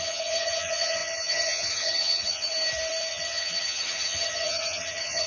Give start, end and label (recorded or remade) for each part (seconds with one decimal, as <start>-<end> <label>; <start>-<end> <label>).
0.0-2.5 remade; 2.5-3.1 recorded; 3.1-5.3 remade